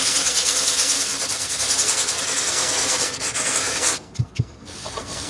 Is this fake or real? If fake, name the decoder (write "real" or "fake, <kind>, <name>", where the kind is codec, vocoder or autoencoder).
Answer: fake, codec, SNAC